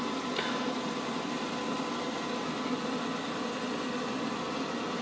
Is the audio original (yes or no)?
yes